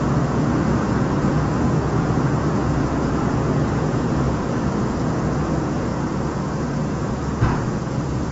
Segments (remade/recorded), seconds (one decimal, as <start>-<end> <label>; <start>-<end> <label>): 0.0-8.3 remade